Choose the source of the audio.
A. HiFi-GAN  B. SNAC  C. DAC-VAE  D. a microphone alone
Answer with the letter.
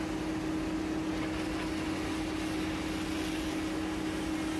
D